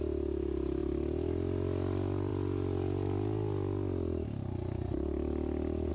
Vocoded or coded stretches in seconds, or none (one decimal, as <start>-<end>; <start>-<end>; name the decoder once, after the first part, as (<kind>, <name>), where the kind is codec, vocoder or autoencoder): none